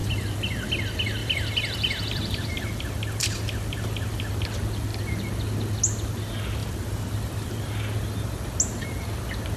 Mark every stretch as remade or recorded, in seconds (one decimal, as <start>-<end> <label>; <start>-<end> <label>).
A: 0.0-0.7 remade; 0.7-1.2 recorded; 1.2-4.3 remade; 4.3-6.6 recorded; 6.6-7.5 remade; 7.5-9.6 recorded